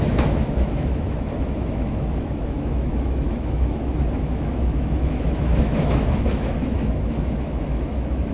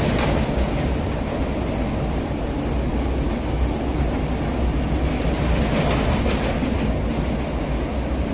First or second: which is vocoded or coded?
first